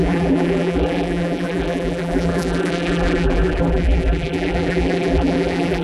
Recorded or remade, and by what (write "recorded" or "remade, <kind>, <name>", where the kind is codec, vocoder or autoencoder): remade, vocoder, BigVGAN v2